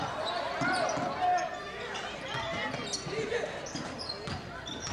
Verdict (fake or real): real